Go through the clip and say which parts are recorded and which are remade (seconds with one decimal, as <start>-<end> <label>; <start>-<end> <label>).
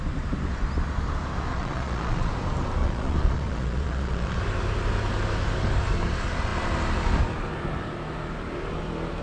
0.0-1.5 recorded; 1.5-2.3 remade; 2.3-2.8 recorded; 2.8-4.4 remade; 4.4-9.2 recorded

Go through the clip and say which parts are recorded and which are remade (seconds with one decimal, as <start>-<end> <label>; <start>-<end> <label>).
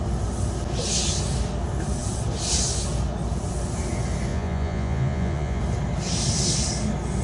0.0-4.3 recorded; 4.3-5.6 remade; 5.6-7.2 recorded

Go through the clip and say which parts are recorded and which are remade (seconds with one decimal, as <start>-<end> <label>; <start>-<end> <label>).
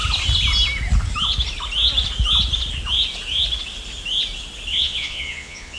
0.0-4.7 recorded; 4.7-5.8 remade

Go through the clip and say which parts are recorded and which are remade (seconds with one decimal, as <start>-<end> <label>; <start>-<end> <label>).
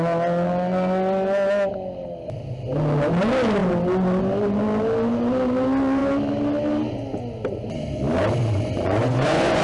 0.0-8.4 recorded; 8.4-9.6 remade